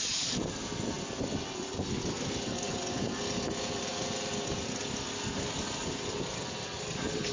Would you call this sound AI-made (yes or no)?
no